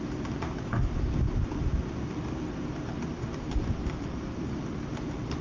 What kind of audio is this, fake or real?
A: fake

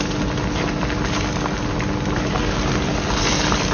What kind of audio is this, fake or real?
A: real